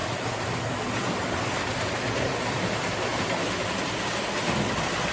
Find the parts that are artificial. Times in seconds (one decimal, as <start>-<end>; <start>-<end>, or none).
none